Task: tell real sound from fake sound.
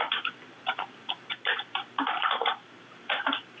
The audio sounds fake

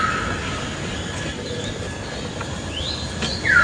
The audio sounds real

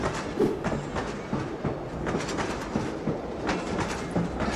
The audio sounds real